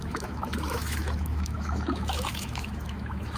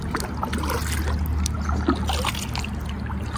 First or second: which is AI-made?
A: first